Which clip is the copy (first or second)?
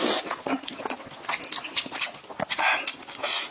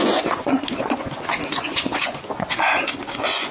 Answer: second